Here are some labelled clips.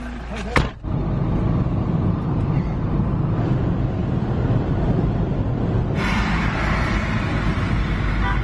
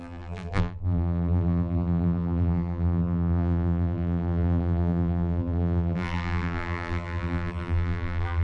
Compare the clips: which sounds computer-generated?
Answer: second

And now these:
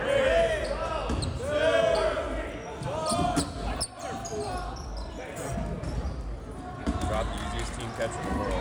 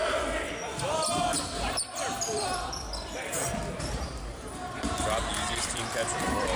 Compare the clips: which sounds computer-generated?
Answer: second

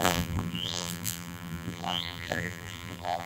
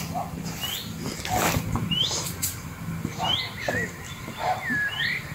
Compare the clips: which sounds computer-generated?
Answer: first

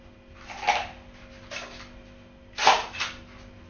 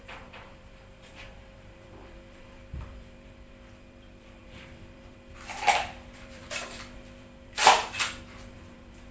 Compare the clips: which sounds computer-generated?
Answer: second